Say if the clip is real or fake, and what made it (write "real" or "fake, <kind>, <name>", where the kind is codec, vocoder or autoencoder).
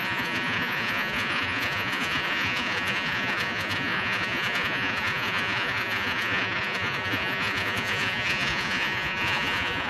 fake, vocoder, Vocos